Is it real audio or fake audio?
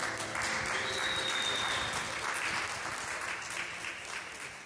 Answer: fake